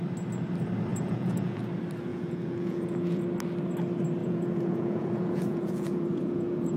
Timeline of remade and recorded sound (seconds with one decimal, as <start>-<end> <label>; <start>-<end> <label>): 0.0-0.9 recorded; 0.9-1.6 remade; 1.6-2.1 recorded; 2.1-3.2 remade; 3.2-4.2 recorded; 4.2-6.8 remade